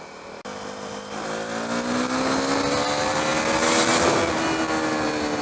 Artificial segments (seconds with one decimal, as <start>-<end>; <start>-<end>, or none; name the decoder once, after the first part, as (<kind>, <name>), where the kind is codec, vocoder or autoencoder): none